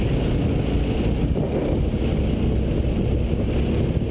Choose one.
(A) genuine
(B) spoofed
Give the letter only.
A